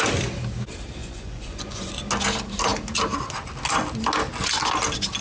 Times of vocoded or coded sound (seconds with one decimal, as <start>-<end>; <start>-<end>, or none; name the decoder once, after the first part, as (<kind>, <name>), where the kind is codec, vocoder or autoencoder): 1.0-1.9 (vocoder, Vocos)